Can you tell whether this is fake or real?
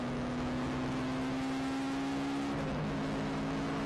fake